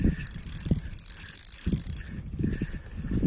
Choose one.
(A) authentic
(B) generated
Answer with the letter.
A